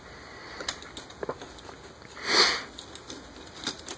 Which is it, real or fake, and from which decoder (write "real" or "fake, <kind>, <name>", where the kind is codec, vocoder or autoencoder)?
real